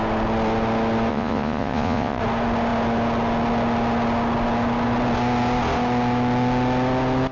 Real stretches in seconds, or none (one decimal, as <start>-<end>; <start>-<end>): 0.0-1.1; 2.2-7.3